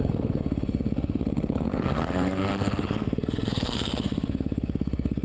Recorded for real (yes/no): no